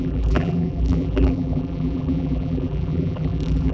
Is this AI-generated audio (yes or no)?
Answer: yes